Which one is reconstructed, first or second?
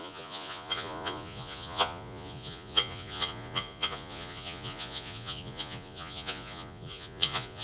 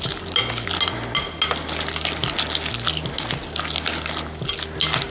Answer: first